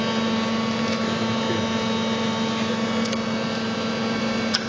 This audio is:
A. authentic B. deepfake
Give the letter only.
A